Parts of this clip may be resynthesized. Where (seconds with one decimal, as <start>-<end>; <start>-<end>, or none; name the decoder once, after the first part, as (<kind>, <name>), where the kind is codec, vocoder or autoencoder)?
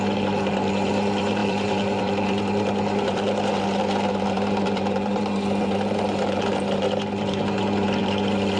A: 0.0-8.6 (vocoder, BigVGAN v2)